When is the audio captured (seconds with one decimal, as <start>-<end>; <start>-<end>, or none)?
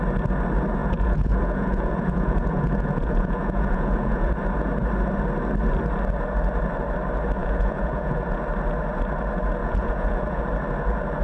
0.0-0.8; 4.4-7.4; 8.4-9.6; 10.4-11.2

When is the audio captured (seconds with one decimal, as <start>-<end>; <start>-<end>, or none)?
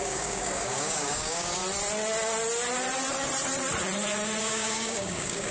1.6-4.4